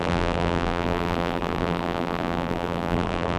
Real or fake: fake